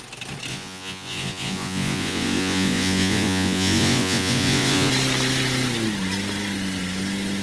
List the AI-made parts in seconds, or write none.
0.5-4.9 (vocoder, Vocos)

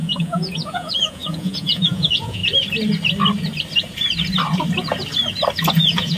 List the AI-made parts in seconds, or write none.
0.0-2.4 (vocoder, Vocos); 5.8-6.2